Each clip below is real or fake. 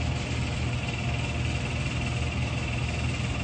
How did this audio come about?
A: real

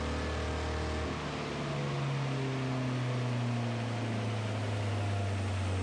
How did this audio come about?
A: real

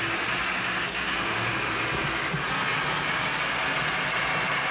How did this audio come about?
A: real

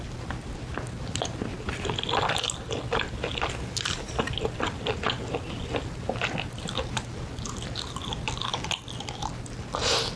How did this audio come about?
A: real